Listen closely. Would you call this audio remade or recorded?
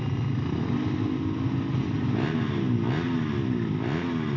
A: recorded